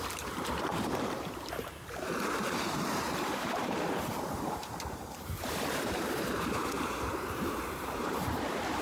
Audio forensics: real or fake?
fake